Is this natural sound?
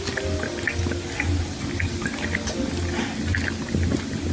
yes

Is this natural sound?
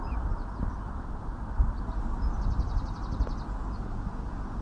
yes